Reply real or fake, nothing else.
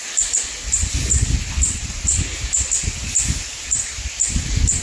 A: real